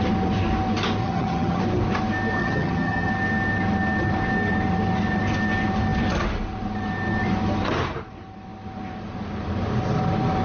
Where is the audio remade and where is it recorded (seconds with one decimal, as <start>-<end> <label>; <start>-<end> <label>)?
0.0-1.0 recorded; 1.0-1.6 remade; 1.6-2.4 recorded; 2.4-3.1 remade; 3.1-10.4 recorded